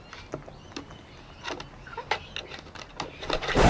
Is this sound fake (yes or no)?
no